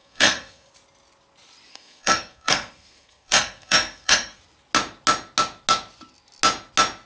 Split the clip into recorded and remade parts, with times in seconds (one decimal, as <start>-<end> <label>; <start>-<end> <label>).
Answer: 0.0-0.7 remade; 0.7-1.7 recorded; 1.7-4.4 remade; 4.4-7.1 recorded

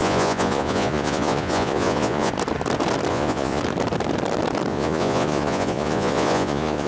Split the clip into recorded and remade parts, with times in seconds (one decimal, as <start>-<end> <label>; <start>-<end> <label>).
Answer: 0.0-2.3 remade; 2.3-3.1 recorded; 3.1-3.6 remade; 3.6-4.7 recorded; 4.7-6.9 remade